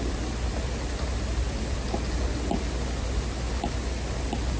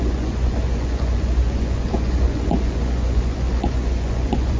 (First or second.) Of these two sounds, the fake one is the second